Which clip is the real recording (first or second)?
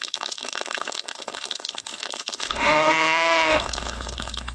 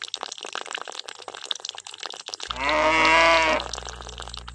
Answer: second